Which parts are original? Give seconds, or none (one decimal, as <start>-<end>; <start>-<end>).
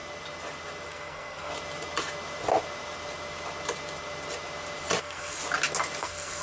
0.0-0.9; 1.5-5.0; 5.4-6.0